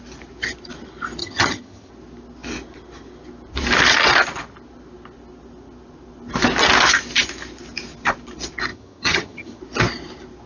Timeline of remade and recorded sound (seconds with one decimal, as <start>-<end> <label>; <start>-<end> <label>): 0.0-1.2 recorded; 1.2-1.9 remade; 1.9-8.7 recorded; 8.7-9.6 remade; 9.6-10.5 recorded